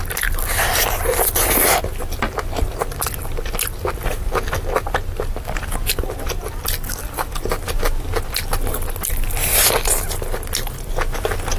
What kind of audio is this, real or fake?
real